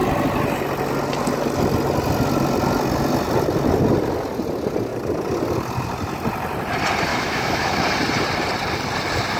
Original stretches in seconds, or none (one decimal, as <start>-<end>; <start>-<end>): 0.0-7.1; 7.8-9.4